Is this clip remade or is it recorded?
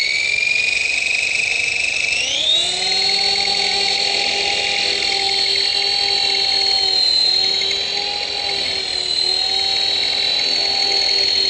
recorded